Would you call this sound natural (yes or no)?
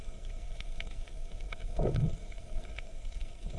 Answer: no